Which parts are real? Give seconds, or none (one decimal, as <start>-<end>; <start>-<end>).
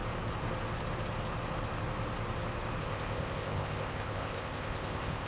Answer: 0.0-2.8